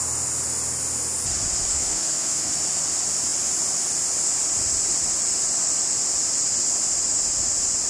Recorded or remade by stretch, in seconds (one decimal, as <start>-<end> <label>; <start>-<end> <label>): 0.0-1.7 recorded; 1.7-2.5 remade; 2.5-7.9 recorded